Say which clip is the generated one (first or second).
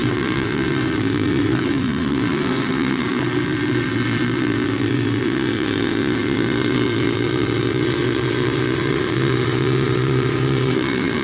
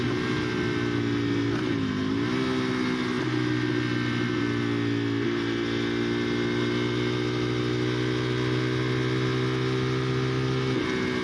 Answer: first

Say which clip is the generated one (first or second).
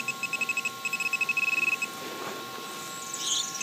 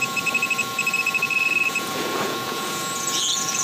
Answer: second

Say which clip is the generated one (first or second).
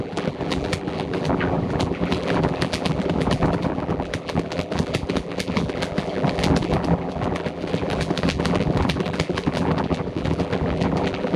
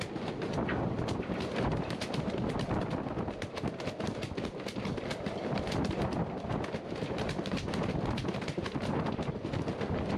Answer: first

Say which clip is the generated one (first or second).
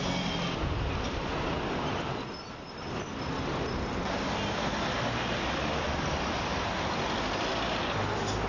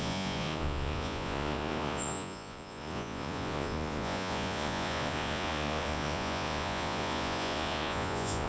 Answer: second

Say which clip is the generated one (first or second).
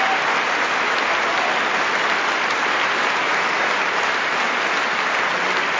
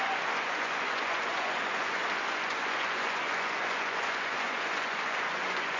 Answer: second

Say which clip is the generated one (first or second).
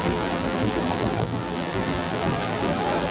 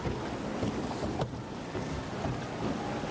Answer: first